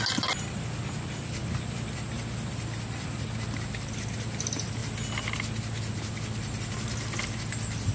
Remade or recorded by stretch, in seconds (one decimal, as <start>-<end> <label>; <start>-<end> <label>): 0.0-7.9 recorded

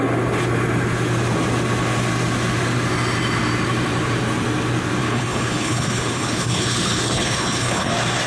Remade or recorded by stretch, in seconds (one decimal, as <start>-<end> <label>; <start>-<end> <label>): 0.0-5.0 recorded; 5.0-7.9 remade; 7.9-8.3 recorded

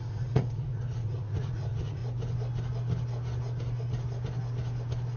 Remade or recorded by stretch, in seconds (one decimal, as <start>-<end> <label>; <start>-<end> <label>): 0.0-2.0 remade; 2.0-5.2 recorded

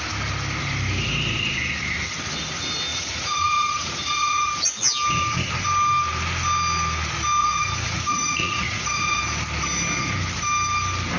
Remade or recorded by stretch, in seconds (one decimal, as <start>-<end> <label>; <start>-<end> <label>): 0.0-2.9 recorded; 2.9-4.5 remade; 4.5-7.4 recorded; 7.4-9.2 remade; 9.2-11.2 recorded

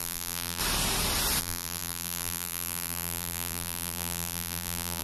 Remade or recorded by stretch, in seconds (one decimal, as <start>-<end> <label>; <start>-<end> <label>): 0.0-0.6 remade; 0.6-1.4 recorded; 1.4-5.0 remade

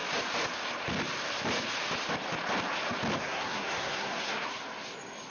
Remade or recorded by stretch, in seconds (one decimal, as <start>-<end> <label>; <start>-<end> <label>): 0.0-3.2 recorded; 3.2-4.6 remade; 4.6-5.3 recorded

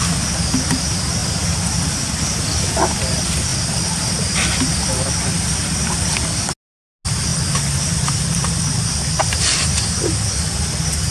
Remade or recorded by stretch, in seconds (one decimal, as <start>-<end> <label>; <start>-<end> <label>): 0.0-11.1 recorded